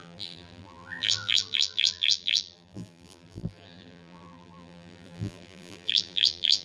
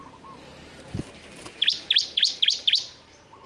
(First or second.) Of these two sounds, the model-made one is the first